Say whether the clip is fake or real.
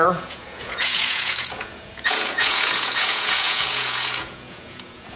fake